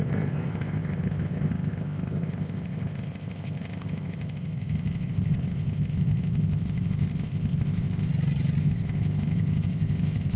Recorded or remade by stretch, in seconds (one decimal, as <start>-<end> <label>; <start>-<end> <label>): 0.0-8.1 remade; 8.1-8.6 recorded; 8.6-10.4 remade